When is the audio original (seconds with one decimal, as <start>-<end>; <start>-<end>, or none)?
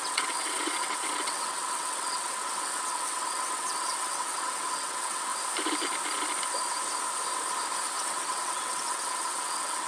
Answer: 5.3-7.9